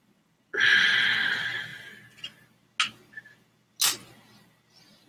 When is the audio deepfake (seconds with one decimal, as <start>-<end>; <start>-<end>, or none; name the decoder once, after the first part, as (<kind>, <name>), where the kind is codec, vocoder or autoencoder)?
none